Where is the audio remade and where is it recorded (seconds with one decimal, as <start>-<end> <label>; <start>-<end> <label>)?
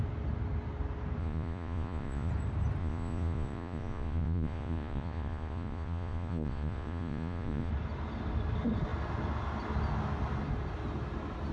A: 0.0-1.2 recorded; 1.2-2.3 remade; 2.3-2.8 recorded; 2.8-7.7 remade; 7.7-11.5 recorded